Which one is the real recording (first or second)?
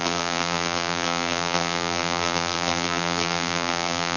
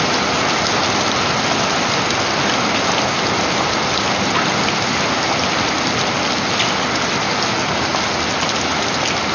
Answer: second